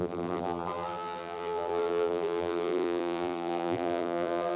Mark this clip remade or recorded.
remade